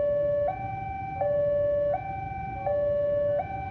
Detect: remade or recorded recorded